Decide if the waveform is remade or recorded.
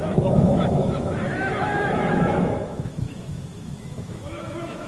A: remade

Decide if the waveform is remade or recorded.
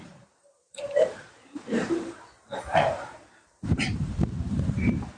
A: remade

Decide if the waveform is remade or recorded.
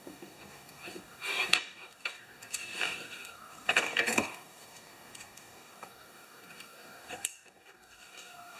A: remade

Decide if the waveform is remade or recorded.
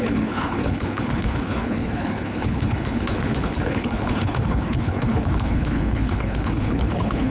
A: remade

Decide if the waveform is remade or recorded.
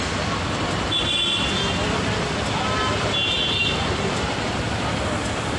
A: recorded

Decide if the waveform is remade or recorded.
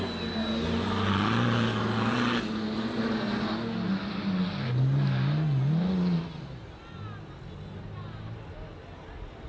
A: recorded